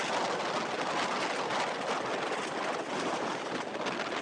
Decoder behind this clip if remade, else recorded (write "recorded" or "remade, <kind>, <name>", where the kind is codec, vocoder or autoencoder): recorded